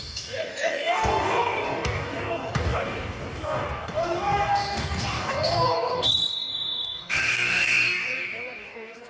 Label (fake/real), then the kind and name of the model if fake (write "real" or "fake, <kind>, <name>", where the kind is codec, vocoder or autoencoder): fake, codec, DAC